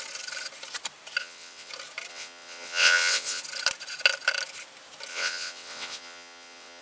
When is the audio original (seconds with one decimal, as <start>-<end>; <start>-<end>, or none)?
0.0-1.2; 1.7-2.1; 3.4-5.1

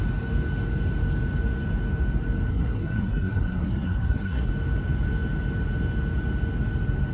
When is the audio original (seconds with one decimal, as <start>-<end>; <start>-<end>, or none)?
0.0-2.5; 4.5-7.1

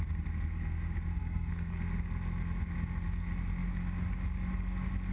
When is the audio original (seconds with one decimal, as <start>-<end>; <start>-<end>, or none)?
0.0-1.1; 1.8-5.1